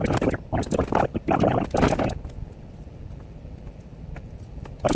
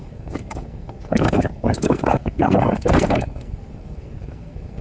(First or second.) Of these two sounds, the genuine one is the first